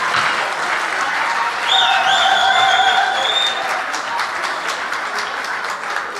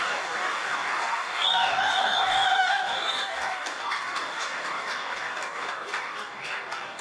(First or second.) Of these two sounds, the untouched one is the first